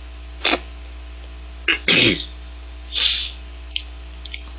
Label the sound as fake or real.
real